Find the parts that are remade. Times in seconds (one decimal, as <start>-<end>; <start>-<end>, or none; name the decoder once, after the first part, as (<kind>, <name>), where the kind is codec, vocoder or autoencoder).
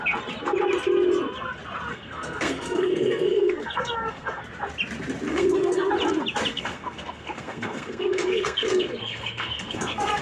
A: 1.9-4.4 (codec, SNAC); 5.3-5.9; 6.5-10.2